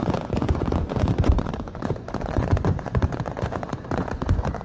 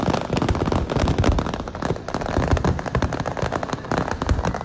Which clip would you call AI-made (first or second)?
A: first